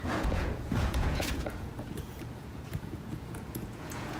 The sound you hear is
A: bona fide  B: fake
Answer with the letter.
B